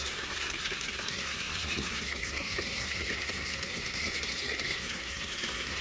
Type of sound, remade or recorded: remade